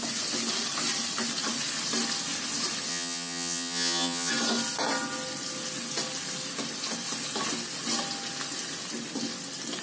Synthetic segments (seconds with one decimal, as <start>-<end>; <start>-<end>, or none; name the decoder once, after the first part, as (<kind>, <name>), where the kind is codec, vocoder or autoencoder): 2.9-4.3 (vocoder, HiFi-GAN)